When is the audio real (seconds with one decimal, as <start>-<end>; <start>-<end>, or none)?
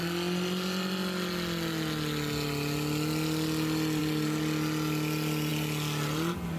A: 0.0-6.6